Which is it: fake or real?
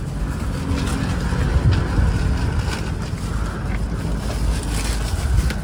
real